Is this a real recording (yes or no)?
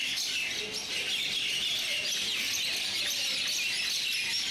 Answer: yes